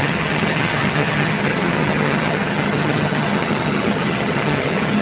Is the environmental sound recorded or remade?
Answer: remade